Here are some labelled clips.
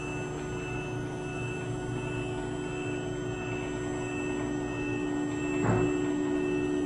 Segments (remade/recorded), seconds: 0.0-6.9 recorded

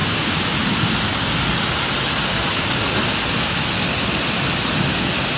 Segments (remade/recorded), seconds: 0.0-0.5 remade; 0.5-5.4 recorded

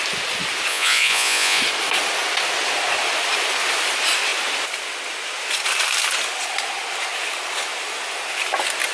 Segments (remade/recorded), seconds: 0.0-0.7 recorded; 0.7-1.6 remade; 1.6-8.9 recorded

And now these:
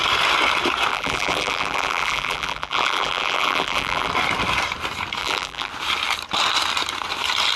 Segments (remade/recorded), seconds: 0.0-0.9 recorded; 0.9-4.1 remade; 4.1-5.2 recorded; 5.2-5.7 remade; 5.7-7.6 recorded